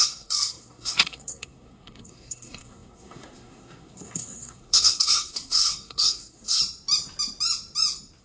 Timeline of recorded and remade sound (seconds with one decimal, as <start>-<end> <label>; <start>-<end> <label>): 0.0-6.6 remade; 6.6-8.2 recorded